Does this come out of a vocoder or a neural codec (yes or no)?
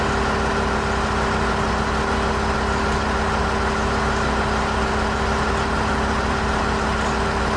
no